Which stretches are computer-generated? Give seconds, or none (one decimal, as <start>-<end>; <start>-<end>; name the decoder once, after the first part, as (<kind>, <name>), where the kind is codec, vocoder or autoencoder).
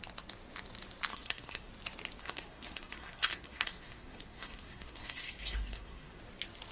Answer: 1.1-1.7 (codec, SNAC); 2.2-6.2